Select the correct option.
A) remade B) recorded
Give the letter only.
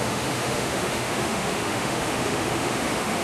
A